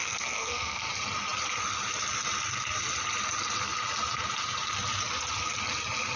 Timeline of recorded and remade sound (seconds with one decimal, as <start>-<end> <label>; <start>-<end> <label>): 0.0-0.8 remade; 0.8-6.2 recorded